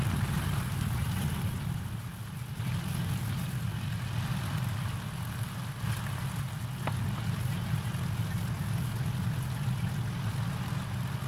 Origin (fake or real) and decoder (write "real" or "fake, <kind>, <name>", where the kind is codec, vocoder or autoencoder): real